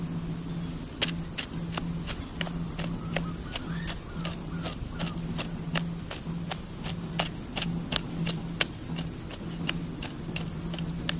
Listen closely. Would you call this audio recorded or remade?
recorded